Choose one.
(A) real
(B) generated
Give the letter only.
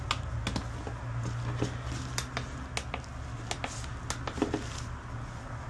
A